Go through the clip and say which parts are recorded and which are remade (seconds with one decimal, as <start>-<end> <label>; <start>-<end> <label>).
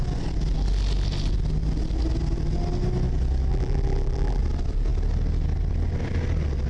0.0-3.5 recorded; 3.5-4.4 remade; 4.4-6.7 recorded